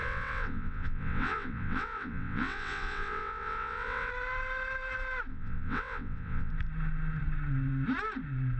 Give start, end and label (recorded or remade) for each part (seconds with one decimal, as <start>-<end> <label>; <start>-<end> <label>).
0.0-4.1 remade; 4.1-5.3 recorded; 5.3-6.5 remade; 6.5-8.6 recorded